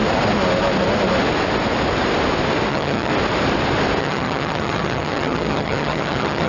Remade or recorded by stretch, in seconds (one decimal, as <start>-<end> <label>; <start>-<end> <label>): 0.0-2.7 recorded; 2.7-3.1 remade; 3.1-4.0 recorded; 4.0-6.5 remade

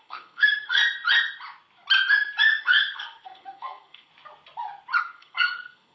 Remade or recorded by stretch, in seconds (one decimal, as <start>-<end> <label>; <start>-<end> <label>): 0.0-0.8 remade; 0.8-2.6 recorded; 2.6-4.1 remade; 4.1-5.0 recorded; 5.0-5.9 remade

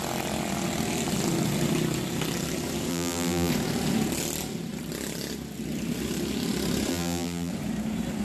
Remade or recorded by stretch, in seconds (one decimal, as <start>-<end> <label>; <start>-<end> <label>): 0.0-2.9 recorded; 2.9-3.5 remade; 3.5-6.9 recorded; 6.9-7.5 remade; 7.5-8.2 recorded

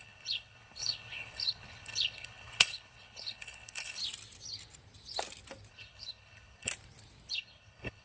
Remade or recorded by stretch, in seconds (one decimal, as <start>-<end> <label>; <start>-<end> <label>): 0.0-4.0 remade; 4.0-5.7 recorded; 5.7-6.7 remade; 6.7-7.3 recorded; 7.3-8.0 remade

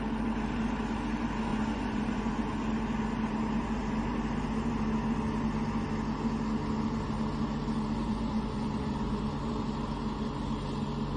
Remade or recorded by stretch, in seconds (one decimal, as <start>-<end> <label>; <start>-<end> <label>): 0.0-1.5 recorded; 1.5-2.3 remade; 2.3-8.0 recorded; 8.0-9.2 remade; 9.2-11.2 recorded

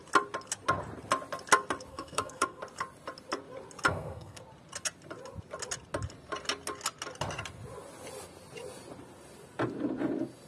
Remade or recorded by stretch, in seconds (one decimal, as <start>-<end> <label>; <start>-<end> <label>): 0.0-1.9 recorded; 1.9-2.6 remade; 2.6-3.9 recorded; 3.9-4.4 remade; 4.4-10.5 recorded

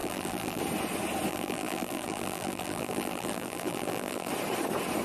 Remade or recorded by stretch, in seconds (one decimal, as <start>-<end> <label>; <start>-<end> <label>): 0.0-0.6 remade; 0.6-1.3 recorded; 1.3-4.3 remade; 4.3-5.0 recorded

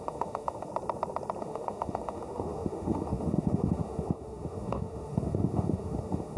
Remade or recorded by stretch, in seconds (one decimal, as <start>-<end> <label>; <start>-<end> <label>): 0.0-0.7 remade; 0.7-1.4 recorded; 1.4-6.4 remade